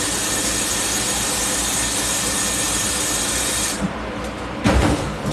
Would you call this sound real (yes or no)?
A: no